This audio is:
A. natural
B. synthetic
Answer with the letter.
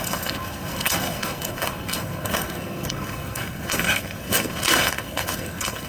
B